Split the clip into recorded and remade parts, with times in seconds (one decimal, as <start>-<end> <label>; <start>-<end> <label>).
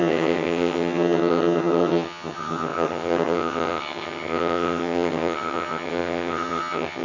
0.0-7.0 remade